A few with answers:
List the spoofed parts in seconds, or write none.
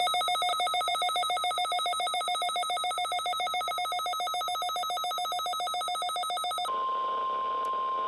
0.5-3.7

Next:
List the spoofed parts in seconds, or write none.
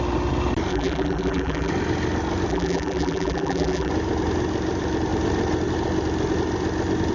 0.7-1.7; 2.5-3.9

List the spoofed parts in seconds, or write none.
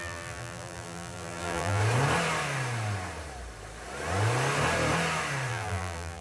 0.0-1.8; 5.5-6.2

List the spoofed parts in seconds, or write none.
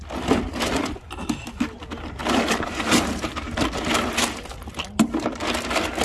2.2-3.5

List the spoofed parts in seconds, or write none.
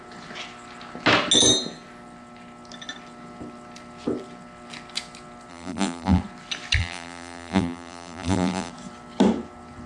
5.5-6.2; 6.8-8.7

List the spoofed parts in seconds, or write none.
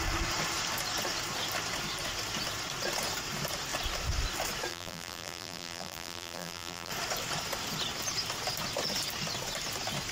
4.7-6.9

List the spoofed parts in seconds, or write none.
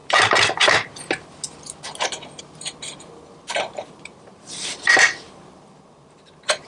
2.4-6.7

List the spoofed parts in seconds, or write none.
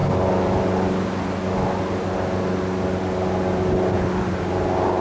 none